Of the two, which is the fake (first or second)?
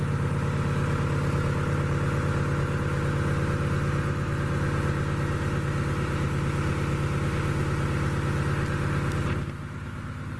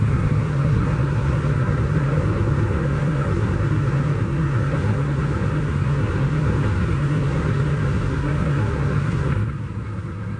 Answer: second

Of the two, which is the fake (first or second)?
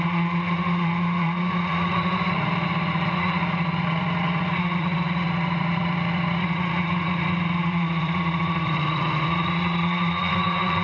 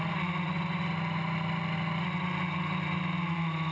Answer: first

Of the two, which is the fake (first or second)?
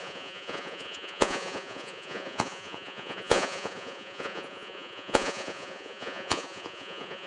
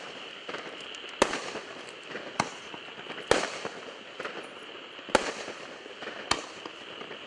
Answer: first